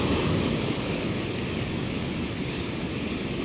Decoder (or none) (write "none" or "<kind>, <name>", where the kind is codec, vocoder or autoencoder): codec, DAC